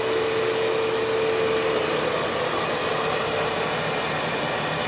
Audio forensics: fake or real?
real